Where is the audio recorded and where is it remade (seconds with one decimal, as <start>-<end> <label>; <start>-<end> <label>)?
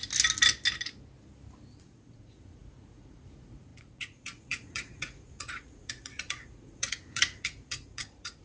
0.0-1.8 recorded; 1.8-8.4 remade